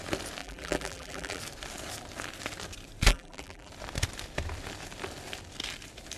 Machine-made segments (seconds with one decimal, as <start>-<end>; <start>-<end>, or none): 0.4-1.4; 3.1-3.7